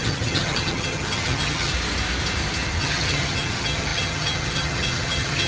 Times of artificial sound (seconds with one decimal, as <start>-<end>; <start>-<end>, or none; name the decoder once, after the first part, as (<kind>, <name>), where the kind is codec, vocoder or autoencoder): 0.0-1.7 (vocoder, HiFi-GAN); 2.8-5.5